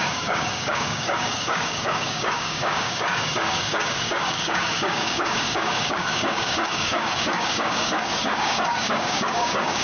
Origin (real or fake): fake